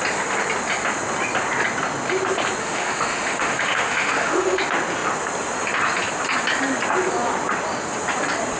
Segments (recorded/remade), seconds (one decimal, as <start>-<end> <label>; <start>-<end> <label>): 0.0-2.6 recorded; 2.6-4.6 remade; 4.6-8.6 recorded